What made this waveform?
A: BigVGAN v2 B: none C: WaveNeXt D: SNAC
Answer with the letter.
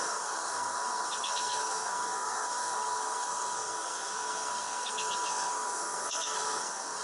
D